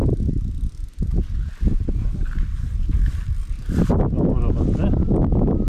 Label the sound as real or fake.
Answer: real